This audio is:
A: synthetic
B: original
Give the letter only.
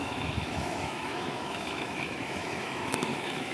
A